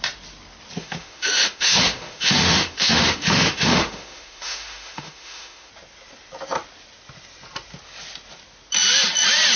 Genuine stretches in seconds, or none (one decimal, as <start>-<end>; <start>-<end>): 0.0-0.8; 5.7-9.6